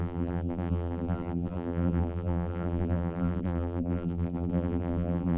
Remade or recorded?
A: remade